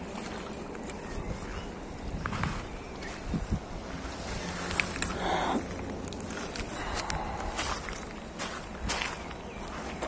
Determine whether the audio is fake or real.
real